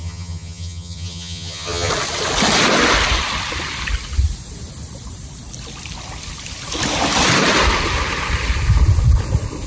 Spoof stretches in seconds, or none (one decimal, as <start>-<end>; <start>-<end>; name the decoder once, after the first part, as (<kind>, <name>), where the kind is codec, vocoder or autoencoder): 0.0-1.9 (vocoder, HiFi-GAN)